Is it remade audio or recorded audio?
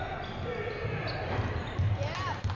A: recorded